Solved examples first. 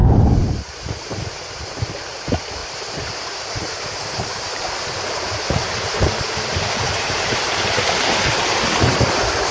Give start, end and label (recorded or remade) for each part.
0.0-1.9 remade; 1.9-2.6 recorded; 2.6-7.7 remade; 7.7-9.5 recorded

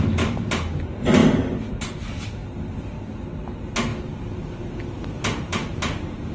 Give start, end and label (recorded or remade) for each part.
0.0-6.3 recorded

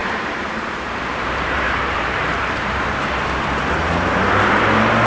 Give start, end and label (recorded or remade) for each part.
0.0-3.1 remade; 3.1-5.1 recorded